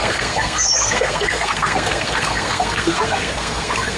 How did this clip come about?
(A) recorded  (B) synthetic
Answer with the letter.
B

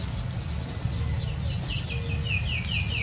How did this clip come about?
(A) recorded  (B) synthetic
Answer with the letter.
A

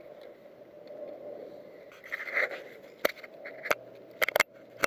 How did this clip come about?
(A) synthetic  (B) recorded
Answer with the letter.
B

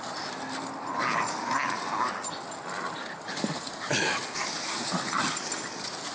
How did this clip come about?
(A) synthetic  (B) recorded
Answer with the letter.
B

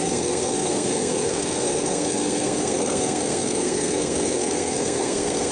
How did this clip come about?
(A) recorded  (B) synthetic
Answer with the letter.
B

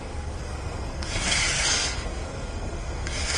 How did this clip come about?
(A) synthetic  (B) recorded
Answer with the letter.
A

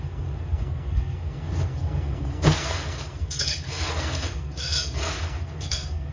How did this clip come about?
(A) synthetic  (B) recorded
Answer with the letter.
A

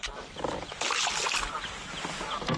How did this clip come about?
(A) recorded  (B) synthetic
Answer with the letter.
A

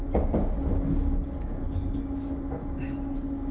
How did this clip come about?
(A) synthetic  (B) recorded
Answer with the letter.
B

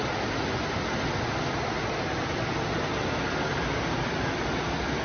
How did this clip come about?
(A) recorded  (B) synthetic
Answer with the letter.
A